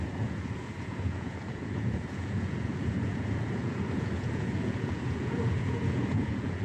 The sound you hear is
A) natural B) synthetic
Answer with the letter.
B